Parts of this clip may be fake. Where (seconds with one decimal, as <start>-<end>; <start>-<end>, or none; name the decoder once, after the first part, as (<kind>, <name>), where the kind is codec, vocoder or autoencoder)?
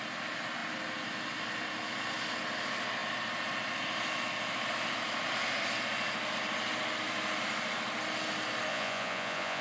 8.7-9.6 (vocoder, Vocos)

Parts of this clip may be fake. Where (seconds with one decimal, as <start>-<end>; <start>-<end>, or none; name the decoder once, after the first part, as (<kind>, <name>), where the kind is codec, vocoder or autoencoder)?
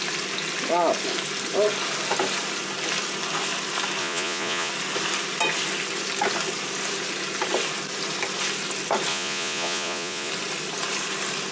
4.0-4.7 (vocoder, Vocos); 9.1-10.3